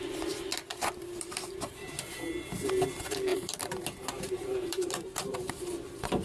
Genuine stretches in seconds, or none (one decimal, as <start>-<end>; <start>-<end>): 0.0-0.5; 2.7-3.3; 5.5-6.2

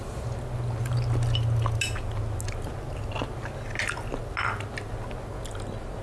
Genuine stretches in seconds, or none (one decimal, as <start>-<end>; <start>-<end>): 0.0-6.0

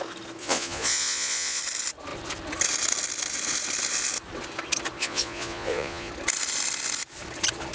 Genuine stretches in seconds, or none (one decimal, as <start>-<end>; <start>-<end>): 0.0-0.4; 1.6-5.0; 6.1-7.7

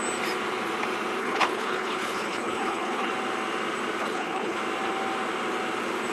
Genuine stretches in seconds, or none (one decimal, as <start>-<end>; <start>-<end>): 0.0-1.2; 3.1-4.0; 4.6-6.1

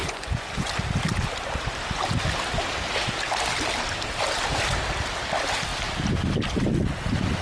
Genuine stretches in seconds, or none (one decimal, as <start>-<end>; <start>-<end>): 0.7-7.4

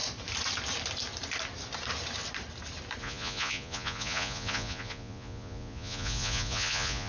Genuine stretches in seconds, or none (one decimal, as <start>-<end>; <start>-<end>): 0.0-3.0

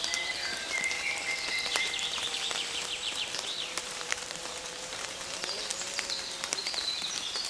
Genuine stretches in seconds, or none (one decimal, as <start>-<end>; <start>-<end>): none

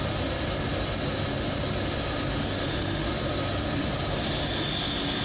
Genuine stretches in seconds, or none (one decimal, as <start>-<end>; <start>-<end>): 0.0-2.4; 3.1-5.2